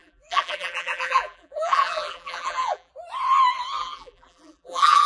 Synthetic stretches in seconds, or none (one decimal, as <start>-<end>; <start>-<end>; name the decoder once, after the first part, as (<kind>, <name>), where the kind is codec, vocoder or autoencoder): 0.0-2.9 (vocoder, BigVGAN v2); 3.8-5.1